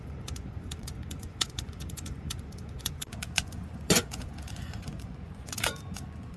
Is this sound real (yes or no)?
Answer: no